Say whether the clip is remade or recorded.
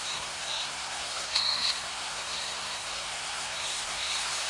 remade